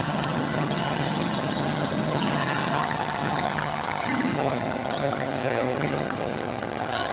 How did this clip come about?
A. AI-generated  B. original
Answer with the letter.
A